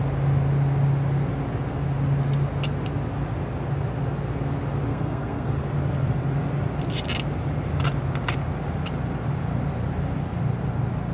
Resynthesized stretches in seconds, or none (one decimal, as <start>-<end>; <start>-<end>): 4.9-5.5